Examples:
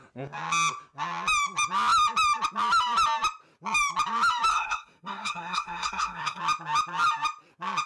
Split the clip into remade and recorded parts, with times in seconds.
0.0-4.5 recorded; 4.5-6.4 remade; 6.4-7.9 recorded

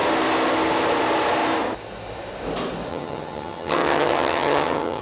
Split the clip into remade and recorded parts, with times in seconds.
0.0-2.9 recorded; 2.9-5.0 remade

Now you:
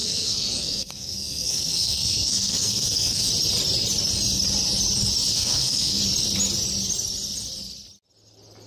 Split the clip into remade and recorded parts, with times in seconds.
0.0-3.3 remade; 3.3-5.3 recorded; 5.3-6.0 remade; 6.0-8.7 recorded

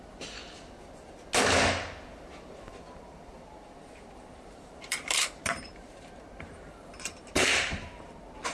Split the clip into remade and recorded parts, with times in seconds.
0.0-0.4 remade; 0.4-4.3 recorded; 4.3-8.5 remade

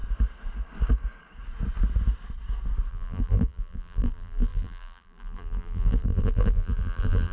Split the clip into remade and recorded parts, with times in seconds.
0.0-2.9 recorded; 2.9-7.3 remade

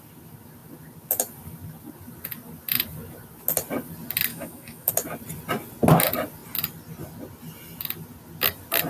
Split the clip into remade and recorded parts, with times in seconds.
0.0-4.3 recorded; 4.3-4.9 remade; 4.9-8.9 recorded

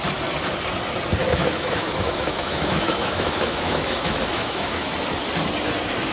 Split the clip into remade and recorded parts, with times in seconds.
0.0-1.2 recorded; 1.2-4.9 remade; 4.9-6.1 recorded